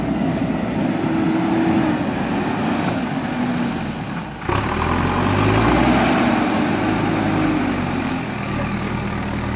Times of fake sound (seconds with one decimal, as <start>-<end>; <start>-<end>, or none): 0.0-0.4; 2.6-3.2; 8.0-9.6